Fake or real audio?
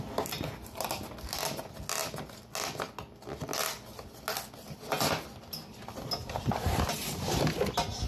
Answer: real